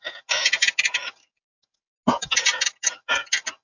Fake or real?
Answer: real